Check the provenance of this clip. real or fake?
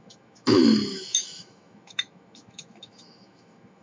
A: fake